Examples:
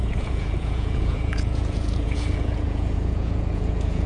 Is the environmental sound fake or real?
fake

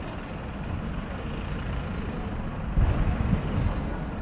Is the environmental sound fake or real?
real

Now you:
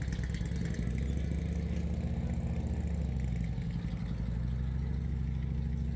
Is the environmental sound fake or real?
real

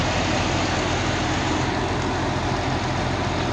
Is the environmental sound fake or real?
real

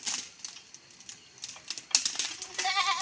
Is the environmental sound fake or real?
real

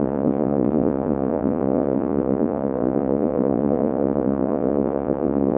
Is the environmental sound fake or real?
fake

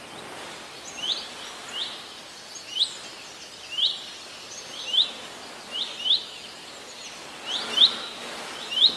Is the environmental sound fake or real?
real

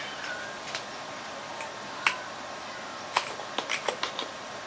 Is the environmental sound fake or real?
real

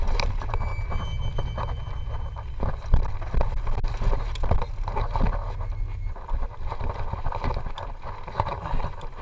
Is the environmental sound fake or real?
real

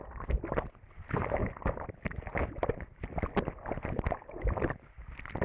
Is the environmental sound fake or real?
real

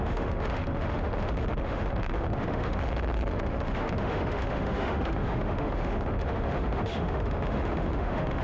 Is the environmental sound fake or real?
fake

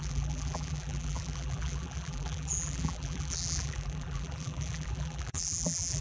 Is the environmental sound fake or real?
fake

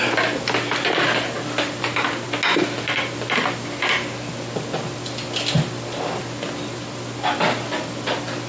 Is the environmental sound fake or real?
real